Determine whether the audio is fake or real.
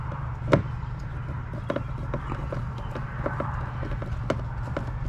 real